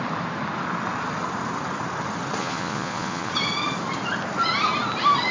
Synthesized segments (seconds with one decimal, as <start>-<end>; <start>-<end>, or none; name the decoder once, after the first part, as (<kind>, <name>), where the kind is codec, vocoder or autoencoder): 2.4-3.3 (vocoder, Vocos)